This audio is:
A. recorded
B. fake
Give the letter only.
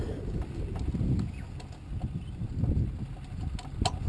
A